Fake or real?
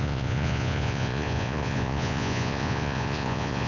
fake